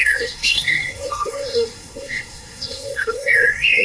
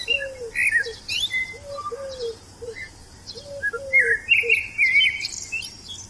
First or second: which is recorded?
second